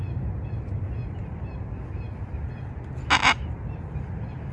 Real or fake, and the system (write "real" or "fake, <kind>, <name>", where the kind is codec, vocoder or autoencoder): real